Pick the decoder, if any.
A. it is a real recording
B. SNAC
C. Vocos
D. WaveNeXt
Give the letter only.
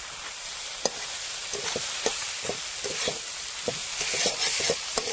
A